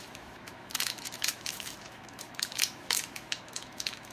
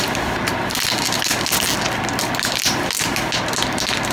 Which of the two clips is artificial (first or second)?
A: first